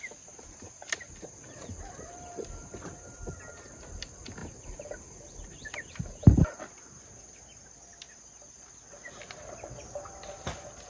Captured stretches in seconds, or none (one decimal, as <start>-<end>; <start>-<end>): 0.0-2.6; 3.3-10.9